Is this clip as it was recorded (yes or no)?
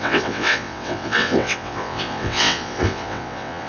no